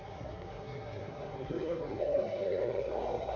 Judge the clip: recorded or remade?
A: remade